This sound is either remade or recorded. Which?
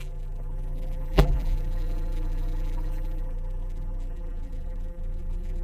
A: remade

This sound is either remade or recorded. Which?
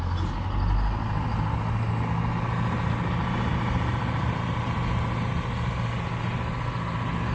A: recorded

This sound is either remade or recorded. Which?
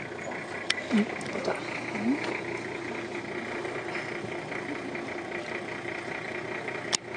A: recorded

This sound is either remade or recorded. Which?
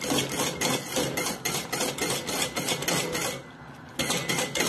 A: recorded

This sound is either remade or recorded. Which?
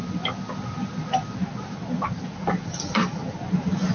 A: recorded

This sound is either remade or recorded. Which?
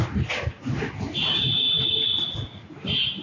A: recorded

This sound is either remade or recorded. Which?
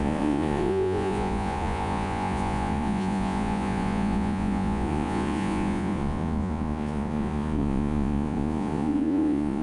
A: remade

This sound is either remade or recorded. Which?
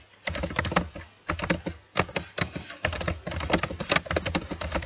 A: recorded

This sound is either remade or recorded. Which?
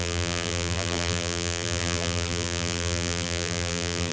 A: remade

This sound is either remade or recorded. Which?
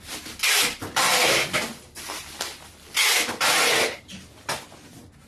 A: recorded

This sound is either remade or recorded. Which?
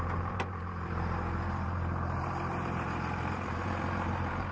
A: remade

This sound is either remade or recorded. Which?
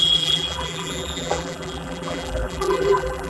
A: remade